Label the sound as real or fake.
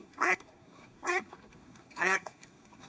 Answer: fake